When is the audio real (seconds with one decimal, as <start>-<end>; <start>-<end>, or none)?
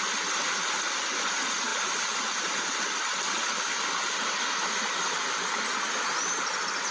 0.0-6.9